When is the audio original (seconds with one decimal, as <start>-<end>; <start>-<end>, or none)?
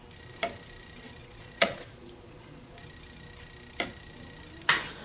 0.0-1.2; 2.8-5.0